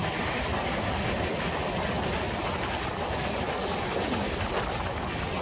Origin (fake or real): real